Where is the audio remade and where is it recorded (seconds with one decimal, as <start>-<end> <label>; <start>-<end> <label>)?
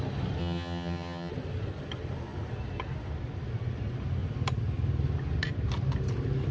0.0-0.4 recorded; 0.4-1.3 remade; 1.3-6.5 recorded